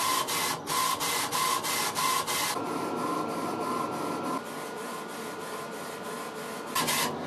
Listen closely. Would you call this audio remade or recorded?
recorded